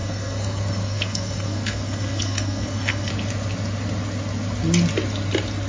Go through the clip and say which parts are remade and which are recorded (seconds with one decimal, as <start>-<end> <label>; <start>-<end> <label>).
0.0-3.1 remade; 3.1-5.7 recorded